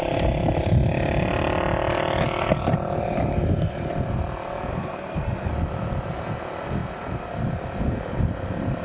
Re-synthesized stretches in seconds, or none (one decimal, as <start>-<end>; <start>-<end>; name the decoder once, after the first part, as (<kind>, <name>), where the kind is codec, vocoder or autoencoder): 4.7-5.5 (codec, SNAC)

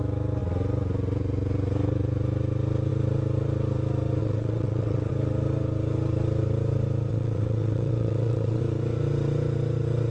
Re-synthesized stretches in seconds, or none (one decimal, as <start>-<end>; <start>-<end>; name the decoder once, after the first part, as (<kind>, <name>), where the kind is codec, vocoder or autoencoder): 4.2-5.1 (vocoder, WaveNeXt); 7.1-8.6

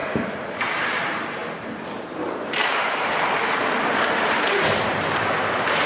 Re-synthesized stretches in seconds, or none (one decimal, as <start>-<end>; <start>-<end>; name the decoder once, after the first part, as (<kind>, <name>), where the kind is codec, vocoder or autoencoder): 0.0-1.4 (vocoder, BigVGAN v2); 2.0-2.6

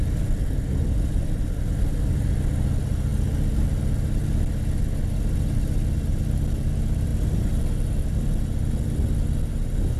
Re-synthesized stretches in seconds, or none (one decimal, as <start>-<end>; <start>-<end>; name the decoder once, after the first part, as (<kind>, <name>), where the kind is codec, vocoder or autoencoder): none

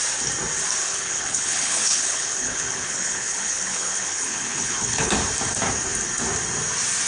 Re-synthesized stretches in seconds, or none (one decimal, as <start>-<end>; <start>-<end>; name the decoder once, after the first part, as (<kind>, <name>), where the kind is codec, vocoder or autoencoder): 0.8-5.1 (codec, HILCodec)

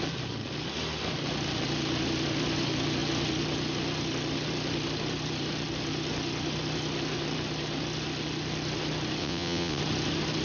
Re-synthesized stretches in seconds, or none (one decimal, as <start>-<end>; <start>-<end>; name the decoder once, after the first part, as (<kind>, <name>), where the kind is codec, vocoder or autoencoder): 9.2-9.8 (vocoder, WaveNeXt)

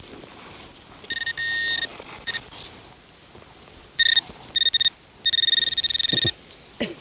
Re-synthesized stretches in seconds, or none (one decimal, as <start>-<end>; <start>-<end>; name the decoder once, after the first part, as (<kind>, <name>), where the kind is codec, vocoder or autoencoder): none

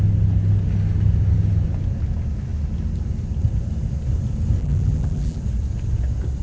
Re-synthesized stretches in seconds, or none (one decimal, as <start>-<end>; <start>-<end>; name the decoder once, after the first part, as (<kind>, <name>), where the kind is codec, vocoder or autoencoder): 4.6-5.4 (vocoder, BigVGAN v2)